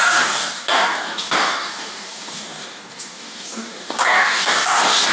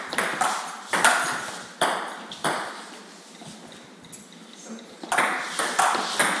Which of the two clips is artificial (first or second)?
first